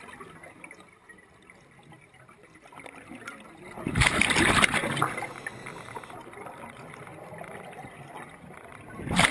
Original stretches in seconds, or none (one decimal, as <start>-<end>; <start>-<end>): 0.0-9.3

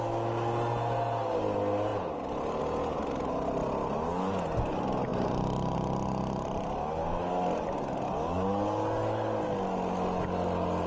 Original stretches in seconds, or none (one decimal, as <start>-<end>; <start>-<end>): 0.0-10.9

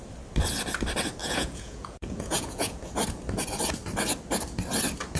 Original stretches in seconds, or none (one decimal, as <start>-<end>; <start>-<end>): 0.0-1.2; 2.8-5.2

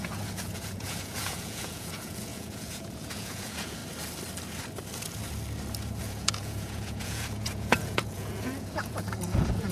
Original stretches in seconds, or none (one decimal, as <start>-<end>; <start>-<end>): 3.8-6.0

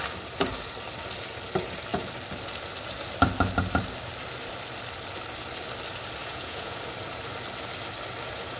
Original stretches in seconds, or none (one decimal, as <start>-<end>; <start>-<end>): 0.0-6.2; 6.8-8.6

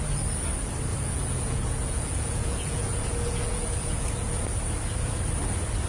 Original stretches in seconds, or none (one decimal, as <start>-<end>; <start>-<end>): 0.0-0.9; 4.4-5.9

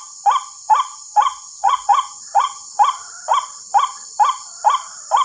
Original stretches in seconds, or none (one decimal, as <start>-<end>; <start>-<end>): 0.0-0.9; 2.7-5.2

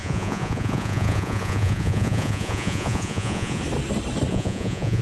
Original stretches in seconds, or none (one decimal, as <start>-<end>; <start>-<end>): 3.6-4.3